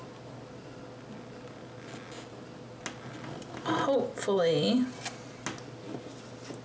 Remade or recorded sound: recorded